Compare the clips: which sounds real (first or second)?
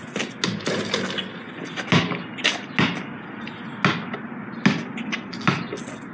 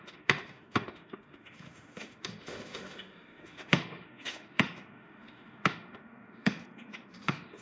first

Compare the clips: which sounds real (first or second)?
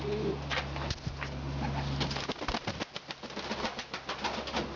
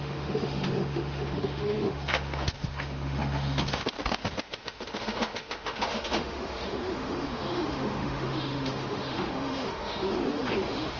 first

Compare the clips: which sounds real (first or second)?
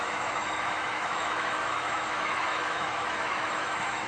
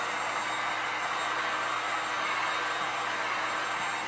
second